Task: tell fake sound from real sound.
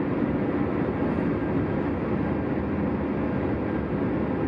real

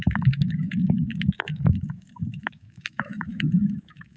fake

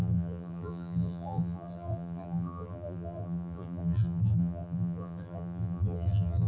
fake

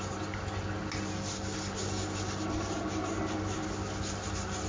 real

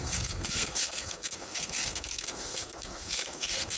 fake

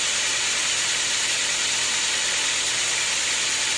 real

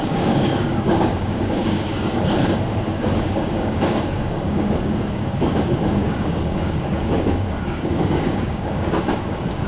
fake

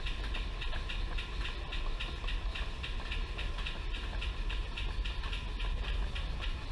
real